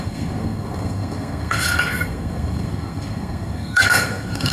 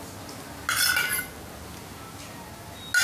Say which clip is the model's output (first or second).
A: first